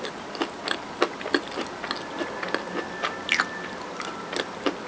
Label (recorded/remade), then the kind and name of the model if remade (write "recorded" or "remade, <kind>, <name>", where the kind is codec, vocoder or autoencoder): recorded